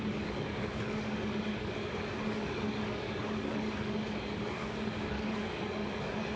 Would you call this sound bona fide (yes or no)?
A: no